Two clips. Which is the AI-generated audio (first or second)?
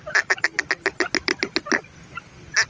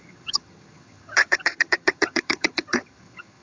second